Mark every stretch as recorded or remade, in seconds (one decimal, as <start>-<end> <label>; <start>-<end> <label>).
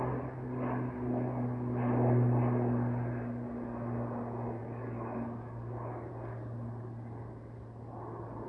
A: 0.0-4.6 recorded; 4.6-6.1 remade; 6.1-8.5 recorded